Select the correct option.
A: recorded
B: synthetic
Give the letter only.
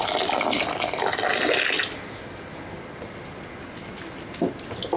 A